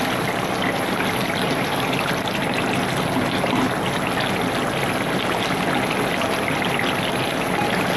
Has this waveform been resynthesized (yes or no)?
no